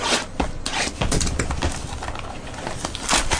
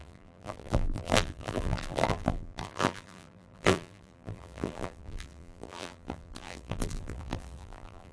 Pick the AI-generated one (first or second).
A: second